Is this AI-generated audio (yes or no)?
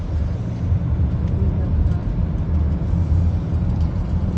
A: no